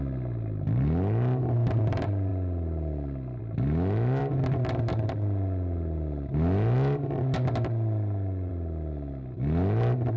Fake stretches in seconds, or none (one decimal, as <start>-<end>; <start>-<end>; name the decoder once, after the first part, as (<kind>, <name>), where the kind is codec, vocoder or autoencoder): none

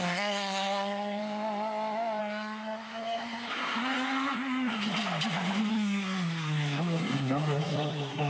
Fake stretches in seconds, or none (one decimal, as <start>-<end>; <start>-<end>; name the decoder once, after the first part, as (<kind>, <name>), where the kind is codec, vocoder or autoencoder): 0.0-1.2 (codec, SNAC); 2.2-4.9; 5.7-8.3

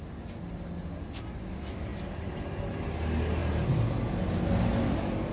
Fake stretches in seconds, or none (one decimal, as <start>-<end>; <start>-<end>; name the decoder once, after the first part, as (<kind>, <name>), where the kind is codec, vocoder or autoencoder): none

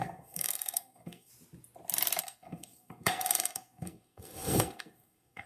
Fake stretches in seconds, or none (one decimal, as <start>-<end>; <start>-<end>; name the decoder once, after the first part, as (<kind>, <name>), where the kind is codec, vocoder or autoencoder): 0.0-1.3 (codec, SNAC); 2.2-5.5

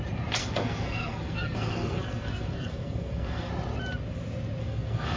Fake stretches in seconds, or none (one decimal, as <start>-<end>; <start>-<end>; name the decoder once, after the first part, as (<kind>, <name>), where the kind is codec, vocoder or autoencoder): 0.4-3.5 (codec, SNAC); 4.6-5.2

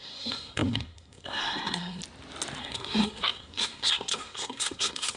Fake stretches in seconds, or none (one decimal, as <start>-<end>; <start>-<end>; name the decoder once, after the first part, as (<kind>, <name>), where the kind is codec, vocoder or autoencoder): 0.0-2.0 (codec, SNAC); 2.6-5.2